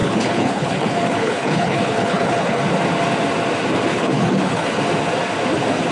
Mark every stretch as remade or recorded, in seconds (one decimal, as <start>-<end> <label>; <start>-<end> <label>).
0.0-2.6 remade; 2.6-3.9 recorded; 3.9-4.8 remade; 4.8-5.9 recorded